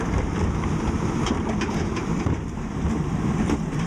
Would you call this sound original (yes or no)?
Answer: no